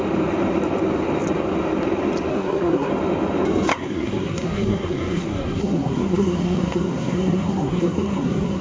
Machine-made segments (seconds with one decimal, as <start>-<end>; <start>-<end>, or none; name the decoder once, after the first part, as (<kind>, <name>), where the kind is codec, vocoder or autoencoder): 2.3-2.9 (codec, SNAC); 3.7-8.6